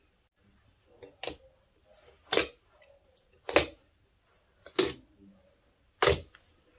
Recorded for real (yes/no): yes